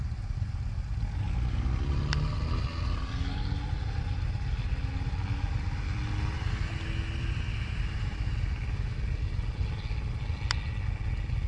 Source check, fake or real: real